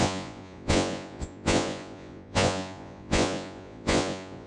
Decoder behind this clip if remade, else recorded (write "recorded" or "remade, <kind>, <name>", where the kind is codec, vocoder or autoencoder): remade, vocoder, Vocos